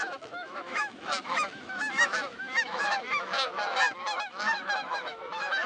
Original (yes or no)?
no